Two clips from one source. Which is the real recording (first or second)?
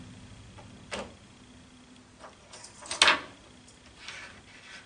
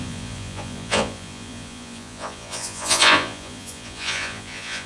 first